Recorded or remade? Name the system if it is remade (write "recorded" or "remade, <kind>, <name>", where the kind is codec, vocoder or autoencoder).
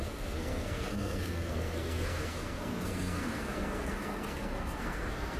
remade, codec, SNAC